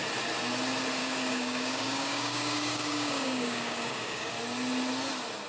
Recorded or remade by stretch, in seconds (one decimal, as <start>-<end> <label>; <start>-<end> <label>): 0.0-1.0 recorded; 1.0-4.3 remade; 4.3-5.5 recorded